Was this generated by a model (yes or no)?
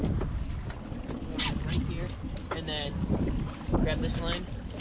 no